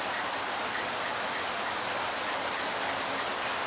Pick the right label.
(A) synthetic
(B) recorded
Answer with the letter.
B